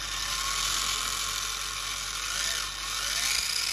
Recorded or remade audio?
recorded